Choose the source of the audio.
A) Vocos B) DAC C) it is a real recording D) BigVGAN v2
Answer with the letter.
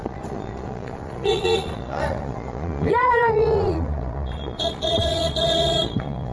A